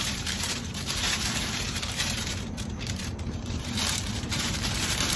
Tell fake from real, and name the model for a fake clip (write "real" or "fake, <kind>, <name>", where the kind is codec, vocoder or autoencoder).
fake, vocoder, BigVGAN v2